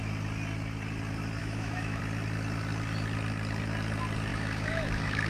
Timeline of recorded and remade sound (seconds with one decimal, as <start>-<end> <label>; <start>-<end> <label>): 0.0-1.4 recorded; 1.4-2.0 remade; 2.0-4.3 recorded; 4.3-5.3 remade